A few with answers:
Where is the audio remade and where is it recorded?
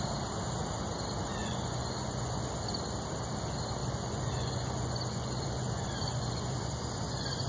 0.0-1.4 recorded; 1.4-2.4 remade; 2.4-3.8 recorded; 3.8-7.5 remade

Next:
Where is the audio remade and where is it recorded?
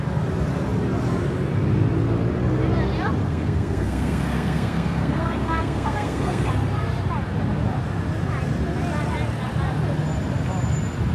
0.0-3.2 recorded; 3.2-6.5 remade; 6.5-11.1 recorded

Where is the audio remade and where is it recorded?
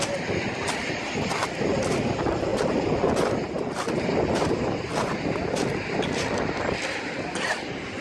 0.0-8.0 recorded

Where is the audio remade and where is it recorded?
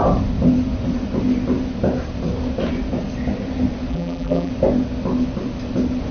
0.0-3.9 recorded; 3.9-4.5 remade; 4.5-6.1 recorded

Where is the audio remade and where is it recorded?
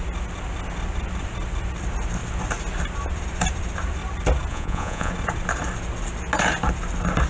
0.0-4.5 recorded; 4.5-5.1 remade; 5.1-7.3 recorded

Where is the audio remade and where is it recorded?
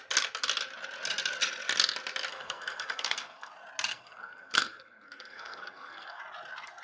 0.0-2.3 recorded; 2.3-3.5 remade; 3.5-3.9 recorded; 3.9-6.2 remade; 6.2-6.8 recorded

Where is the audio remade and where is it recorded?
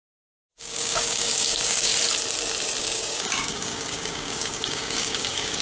0.0-1.9 remade; 1.9-2.8 recorded; 2.8-5.6 remade